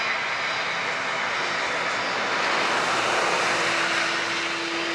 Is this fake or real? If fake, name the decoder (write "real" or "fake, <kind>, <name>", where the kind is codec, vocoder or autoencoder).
real